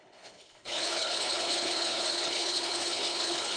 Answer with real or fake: fake